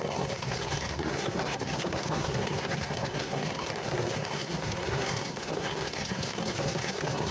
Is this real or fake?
fake